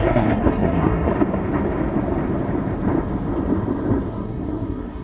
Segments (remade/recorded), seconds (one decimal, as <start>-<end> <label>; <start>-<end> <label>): 0.0-1.1 remade; 1.1-4.1 recorded; 4.1-5.0 remade